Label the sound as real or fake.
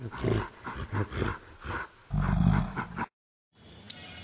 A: real